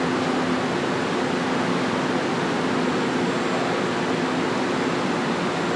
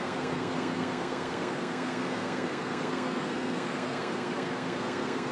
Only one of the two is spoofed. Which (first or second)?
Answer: second